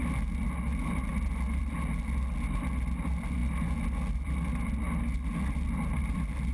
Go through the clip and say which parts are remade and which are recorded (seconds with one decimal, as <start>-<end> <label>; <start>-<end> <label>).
0.0-6.5 recorded